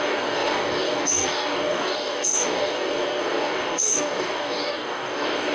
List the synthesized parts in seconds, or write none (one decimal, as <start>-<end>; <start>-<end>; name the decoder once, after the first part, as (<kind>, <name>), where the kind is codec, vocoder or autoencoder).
0.0-5.5 (codec, DAC)